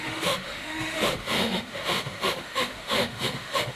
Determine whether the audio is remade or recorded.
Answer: remade